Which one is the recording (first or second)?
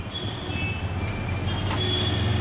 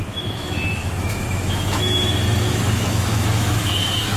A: first